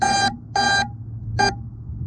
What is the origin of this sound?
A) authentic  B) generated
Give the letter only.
A